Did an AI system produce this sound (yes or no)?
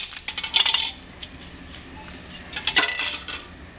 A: no